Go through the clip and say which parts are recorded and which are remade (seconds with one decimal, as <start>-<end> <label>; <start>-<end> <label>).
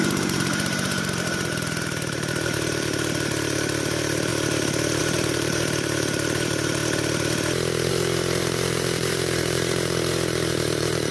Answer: 0.0-4.3 remade; 4.3-5.0 recorded; 5.0-6.8 remade; 6.8-7.9 recorded; 7.9-11.1 remade